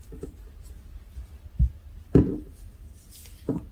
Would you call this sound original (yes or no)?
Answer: yes